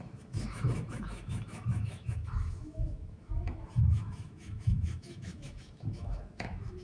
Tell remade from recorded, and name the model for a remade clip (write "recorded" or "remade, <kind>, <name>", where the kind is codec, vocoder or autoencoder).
remade, autoencoder, DAC-VAE